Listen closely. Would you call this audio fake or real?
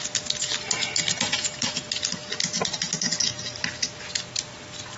real